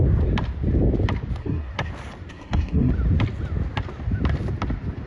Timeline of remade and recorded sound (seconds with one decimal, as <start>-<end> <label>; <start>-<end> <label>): 0.0-1.4 recorded; 1.4-1.9 remade; 1.9-2.3 recorded; 2.3-2.9 remade; 2.9-5.1 recorded